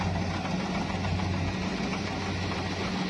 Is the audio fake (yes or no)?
no